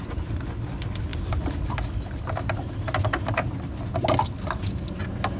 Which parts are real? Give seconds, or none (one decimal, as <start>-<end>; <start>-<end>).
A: 0.0-1.1; 2.7-5.4